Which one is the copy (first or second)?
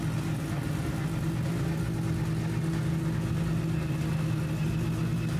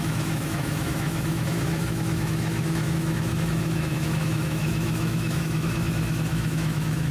second